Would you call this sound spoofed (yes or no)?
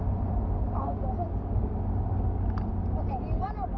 no